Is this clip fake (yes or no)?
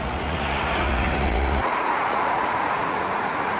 yes